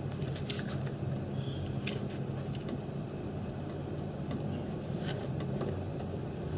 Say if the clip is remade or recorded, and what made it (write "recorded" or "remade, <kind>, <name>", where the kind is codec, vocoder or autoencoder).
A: recorded